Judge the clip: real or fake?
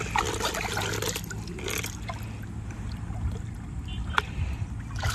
real